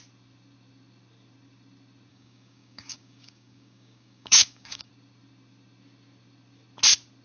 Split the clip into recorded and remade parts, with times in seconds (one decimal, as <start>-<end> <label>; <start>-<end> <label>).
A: 0.0-2.1 recorded; 2.1-4.9 remade; 4.9-7.2 recorded